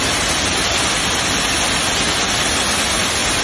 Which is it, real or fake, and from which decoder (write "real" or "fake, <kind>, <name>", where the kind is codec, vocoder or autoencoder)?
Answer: real